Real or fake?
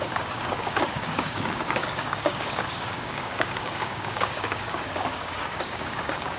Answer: fake